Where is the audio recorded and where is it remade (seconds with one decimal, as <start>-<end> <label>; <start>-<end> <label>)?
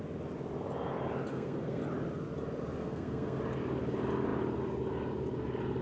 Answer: 0.0-1.3 recorded; 1.3-1.8 remade; 1.8-2.8 recorded; 2.8-3.4 remade; 3.4-5.8 recorded